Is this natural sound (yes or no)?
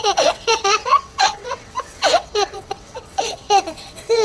no